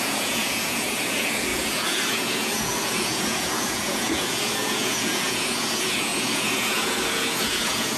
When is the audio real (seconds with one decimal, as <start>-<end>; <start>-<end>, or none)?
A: none